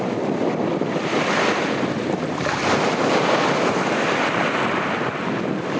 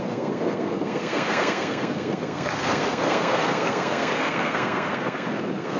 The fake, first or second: second